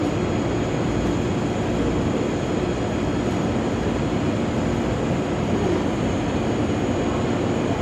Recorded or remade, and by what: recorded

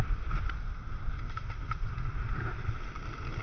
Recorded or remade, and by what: recorded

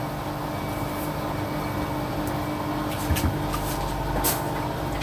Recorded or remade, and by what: recorded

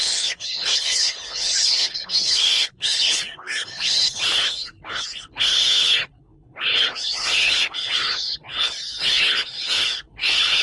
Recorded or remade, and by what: remade, codec, HILCodec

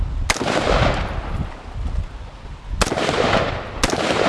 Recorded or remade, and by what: recorded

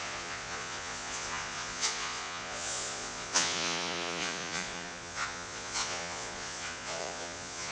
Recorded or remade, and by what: remade, vocoder, Vocos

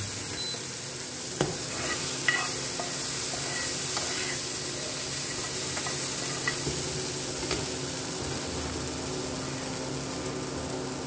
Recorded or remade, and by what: recorded